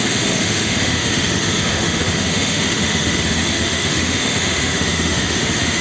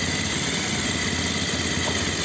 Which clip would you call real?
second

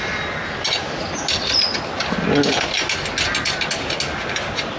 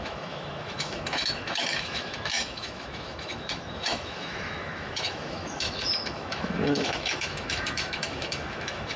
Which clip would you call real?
first